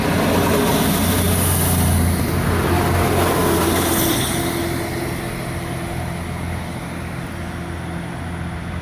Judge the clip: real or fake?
real